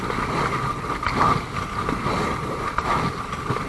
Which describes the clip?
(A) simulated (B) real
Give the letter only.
B